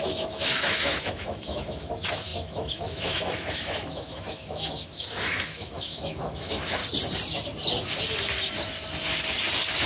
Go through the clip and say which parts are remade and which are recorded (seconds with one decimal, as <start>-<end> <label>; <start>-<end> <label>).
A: 0.0-6.8 remade; 6.8-9.9 recorded